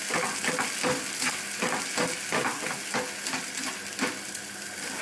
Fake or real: real